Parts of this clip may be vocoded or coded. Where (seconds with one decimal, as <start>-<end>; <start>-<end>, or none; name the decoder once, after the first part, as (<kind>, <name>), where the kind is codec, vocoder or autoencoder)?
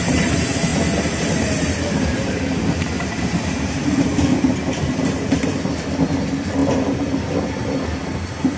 0.0-0.7 (vocoder, BigVGAN v2); 1.6-4.1; 4.8-8.6